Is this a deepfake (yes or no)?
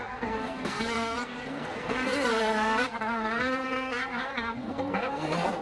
yes